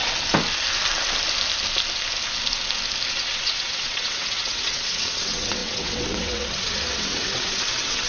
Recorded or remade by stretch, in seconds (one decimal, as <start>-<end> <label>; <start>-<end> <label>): 0.0-3.1 recorded; 3.1-8.1 remade